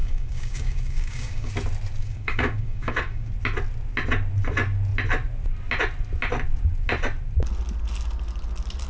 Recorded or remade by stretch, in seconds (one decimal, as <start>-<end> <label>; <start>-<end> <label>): 0.0-1.5 remade; 1.5-2.0 recorded; 2.0-3.3 remade; 3.3-8.9 recorded